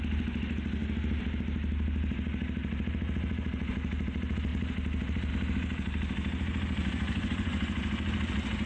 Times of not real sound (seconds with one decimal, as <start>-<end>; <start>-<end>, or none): 6.8-7.8